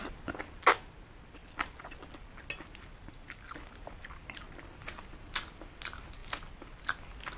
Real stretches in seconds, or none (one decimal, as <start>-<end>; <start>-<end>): 0.0-7.4